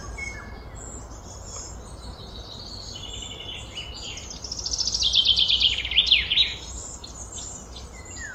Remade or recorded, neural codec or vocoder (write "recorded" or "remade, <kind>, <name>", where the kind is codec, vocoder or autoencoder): recorded